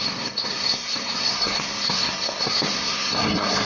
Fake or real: fake